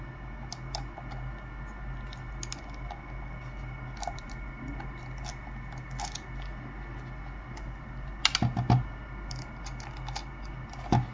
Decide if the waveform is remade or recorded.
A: recorded